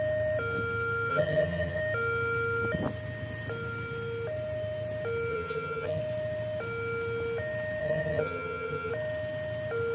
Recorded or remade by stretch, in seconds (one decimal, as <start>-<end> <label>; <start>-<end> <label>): 0.0-1.1 recorded; 1.1-1.8 remade; 1.8-5.3 recorded; 5.3-6.0 remade; 6.0-7.8 recorded; 7.8-8.9 remade; 8.9-9.9 recorded